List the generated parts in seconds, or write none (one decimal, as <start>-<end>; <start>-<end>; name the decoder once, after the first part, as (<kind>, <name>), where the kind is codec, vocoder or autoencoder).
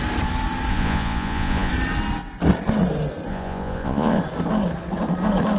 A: 0.7-1.7 (vocoder, Vocos); 3.3-4.2